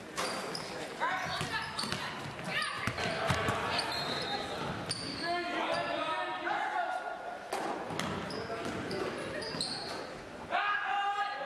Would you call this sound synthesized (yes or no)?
no